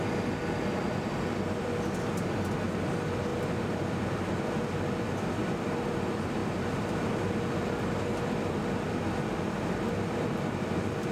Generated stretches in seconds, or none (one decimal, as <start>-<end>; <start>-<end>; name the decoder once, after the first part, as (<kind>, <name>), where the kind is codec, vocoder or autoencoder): none